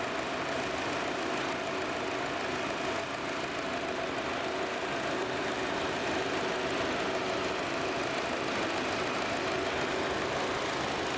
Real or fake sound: real